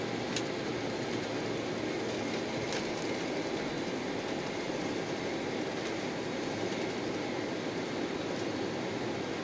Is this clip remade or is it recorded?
recorded